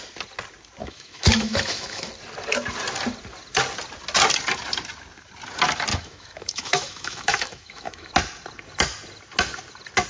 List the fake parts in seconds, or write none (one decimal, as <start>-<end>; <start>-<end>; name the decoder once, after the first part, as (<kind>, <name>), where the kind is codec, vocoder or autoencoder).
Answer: 0.8-2.1 (autoencoder, DAC-VAE); 5.9-8.1